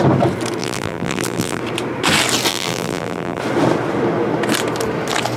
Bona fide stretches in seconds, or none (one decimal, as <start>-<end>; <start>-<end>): 0.0-0.6; 1.6-2.5; 3.4-5.4